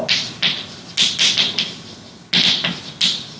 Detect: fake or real real